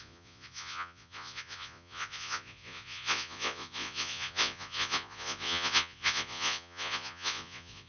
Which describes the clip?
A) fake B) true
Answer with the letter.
A